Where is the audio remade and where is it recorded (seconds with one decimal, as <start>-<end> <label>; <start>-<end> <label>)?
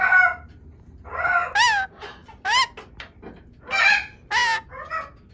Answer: 0.0-5.3 recorded